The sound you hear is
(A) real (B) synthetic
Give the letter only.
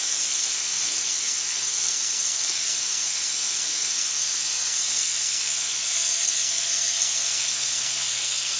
B